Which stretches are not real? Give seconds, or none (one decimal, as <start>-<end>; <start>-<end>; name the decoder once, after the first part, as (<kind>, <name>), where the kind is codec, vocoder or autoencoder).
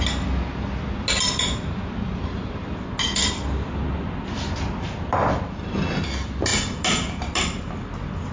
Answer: none